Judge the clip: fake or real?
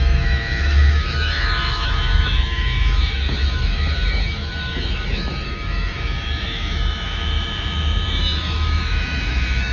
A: fake